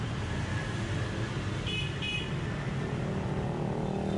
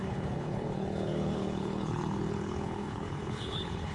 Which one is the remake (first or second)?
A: second